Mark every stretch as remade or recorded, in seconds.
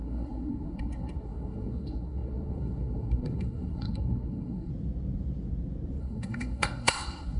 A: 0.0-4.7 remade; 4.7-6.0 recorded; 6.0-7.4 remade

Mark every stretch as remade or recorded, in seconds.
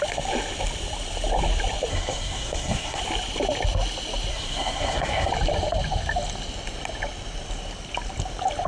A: 0.0-1.9 recorded; 1.9-3.0 remade; 3.0-4.3 recorded; 4.3-5.3 remade; 5.3-8.7 recorded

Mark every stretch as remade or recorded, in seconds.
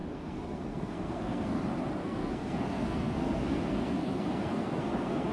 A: 0.0-1.6 remade; 1.6-2.0 recorded; 2.0-5.3 remade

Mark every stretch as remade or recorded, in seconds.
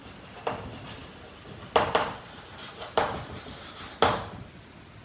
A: 0.0-5.0 recorded